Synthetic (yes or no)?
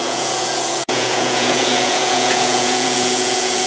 yes